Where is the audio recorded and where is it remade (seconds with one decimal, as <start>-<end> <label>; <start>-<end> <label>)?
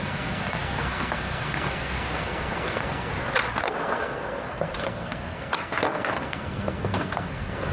0.0-3.1 remade; 3.1-3.6 recorded; 3.6-7.7 remade